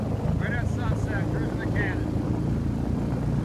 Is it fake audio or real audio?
real